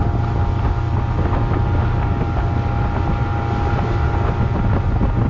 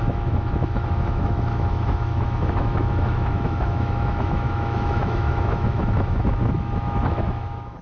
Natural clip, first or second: first